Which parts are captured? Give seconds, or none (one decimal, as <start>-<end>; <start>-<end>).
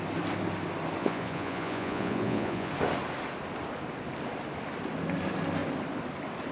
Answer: 0.0-1.0; 2.7-6.5